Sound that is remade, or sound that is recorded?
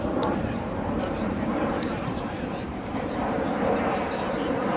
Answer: remade